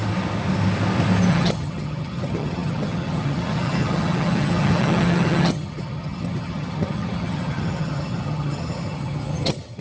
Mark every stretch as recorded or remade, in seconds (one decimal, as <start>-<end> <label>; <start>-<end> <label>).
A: 0.0-1.3 recorded; 1.3-9.8 remade